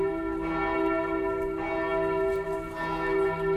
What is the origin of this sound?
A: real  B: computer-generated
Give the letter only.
A